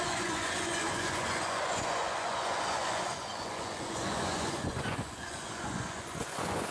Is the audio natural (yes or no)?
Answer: no